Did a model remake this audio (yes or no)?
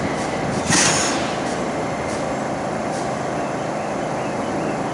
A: no